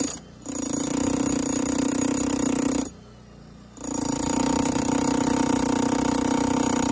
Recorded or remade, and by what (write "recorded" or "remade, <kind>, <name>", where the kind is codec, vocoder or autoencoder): recorded